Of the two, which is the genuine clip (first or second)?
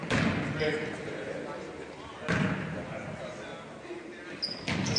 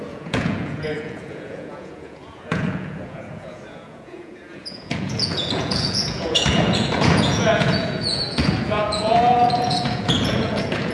first